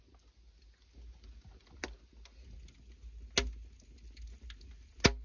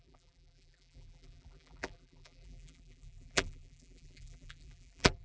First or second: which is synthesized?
second